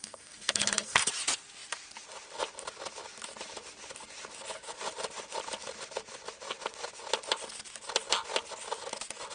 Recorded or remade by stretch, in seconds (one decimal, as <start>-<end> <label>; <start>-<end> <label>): 0.0-1.1 remade; 1.1-9.3 recorded